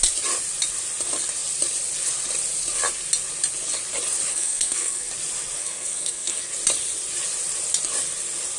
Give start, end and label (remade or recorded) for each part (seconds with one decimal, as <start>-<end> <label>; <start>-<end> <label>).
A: 0.0-4.3 recorded; 4.3-5.1 remade; 5.1-5.6 recorded; 5.6-6.5 remade; 6.5-8.6 recorded